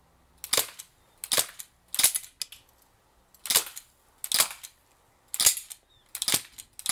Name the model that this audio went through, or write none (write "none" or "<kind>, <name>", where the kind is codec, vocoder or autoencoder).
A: none